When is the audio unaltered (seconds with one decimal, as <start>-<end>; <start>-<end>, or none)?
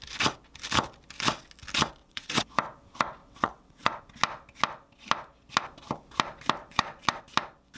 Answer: 0.0-2.0; 2.5-3.2; 4.0-6.6; 7.2-7.8